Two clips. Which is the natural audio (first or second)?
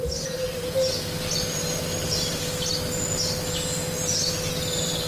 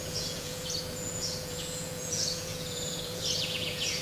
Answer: first